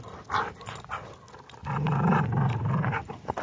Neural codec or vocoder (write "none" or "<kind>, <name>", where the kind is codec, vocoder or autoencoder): none